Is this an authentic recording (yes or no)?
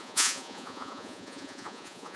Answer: no